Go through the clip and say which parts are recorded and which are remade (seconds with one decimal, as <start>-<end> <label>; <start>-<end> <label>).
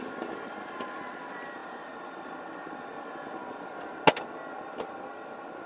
0.0-5.7 recorded